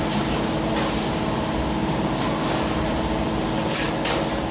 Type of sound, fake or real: real